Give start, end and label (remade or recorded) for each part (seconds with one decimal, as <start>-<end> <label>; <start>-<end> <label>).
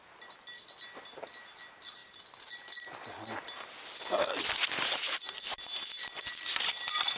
0.0-7.2 recorded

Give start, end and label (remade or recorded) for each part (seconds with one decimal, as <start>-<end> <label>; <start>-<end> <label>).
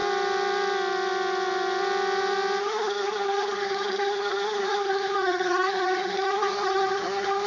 0.0-2.6 recorded; 2.6-7.5 remade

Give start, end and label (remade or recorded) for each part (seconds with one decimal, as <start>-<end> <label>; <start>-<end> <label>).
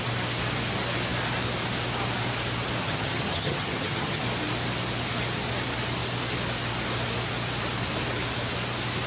0.0-2.8 recorded; 2.8-4.2 remade; 4.2-9.1 recorded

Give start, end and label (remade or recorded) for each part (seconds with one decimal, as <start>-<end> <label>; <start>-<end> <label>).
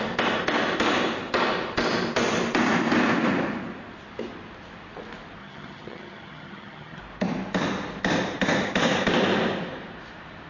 0.0-5.4 recorded; 5.4-7.0 remade; 7.0-10.5 recorded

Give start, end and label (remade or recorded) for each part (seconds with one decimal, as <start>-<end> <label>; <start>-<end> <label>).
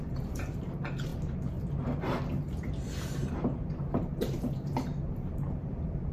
0.0-1.1 remade; 1.1-2.4 recorded; 2.4-6.1 remade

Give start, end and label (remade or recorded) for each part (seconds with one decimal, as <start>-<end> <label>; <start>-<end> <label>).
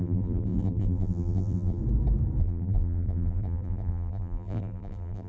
0.0-1.8 remade; 1.8-2.4 recorded; 2.4-5.3 remade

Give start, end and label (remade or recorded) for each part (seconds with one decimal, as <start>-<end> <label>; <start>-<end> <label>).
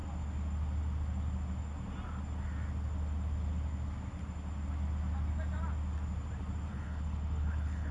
0.0-6.7 recorded; 6.7-7.9 remade